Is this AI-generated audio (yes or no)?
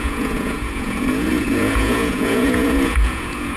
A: yes